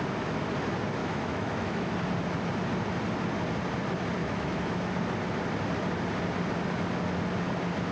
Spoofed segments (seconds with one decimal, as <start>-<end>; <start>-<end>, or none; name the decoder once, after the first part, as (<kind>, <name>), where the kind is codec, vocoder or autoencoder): 1.0-1.9 (autoencoder, DAC-VAE); 4.2-4.9